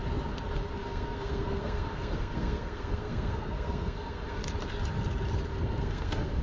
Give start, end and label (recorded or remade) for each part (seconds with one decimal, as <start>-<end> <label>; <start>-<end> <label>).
0.0-0.8 recorded; 0.8-4.4 remade; 4.4-5.5 recorded; 5.5-6.4 remade